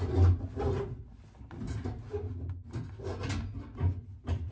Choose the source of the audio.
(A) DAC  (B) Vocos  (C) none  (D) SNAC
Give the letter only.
C